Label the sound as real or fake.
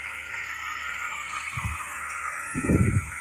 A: fake